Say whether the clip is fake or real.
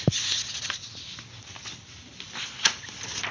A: real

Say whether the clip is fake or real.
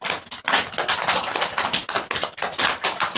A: real